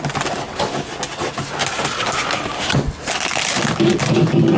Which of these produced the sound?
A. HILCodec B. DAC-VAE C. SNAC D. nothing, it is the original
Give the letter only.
D